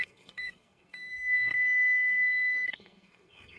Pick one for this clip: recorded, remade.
remade